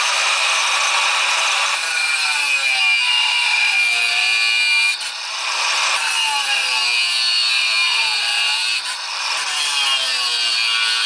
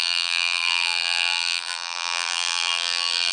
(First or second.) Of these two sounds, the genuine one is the first